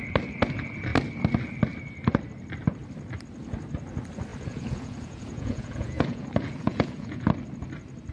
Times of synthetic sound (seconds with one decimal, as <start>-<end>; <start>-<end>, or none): 4.3-7.2